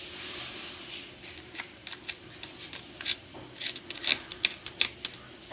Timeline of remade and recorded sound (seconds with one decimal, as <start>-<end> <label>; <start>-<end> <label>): 0.0-5.5 recorded